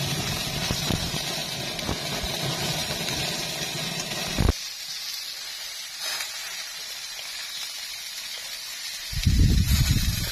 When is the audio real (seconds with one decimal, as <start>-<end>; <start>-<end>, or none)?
0.0-10.3